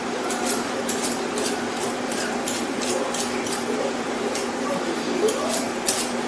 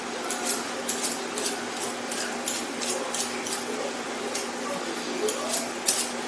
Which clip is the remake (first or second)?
first